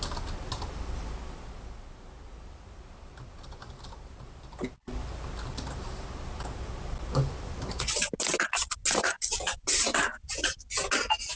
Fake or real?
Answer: real